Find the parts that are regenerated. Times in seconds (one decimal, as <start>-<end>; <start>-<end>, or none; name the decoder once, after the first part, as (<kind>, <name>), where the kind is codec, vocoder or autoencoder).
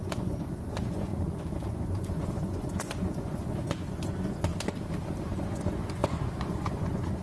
0.0-1.1 (vocoder, Vocos); 1.7-4.5; 5.2-7.2